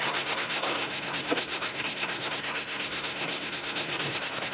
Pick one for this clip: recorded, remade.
remade